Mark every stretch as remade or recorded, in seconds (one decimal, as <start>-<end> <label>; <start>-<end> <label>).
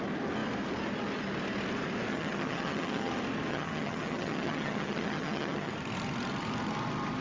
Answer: 0.0-2.1 recorded; 2.1-3.1 remade; 3.1-3.5 recorded; 3.5-5.7 remade; 5.7-7.2 recorded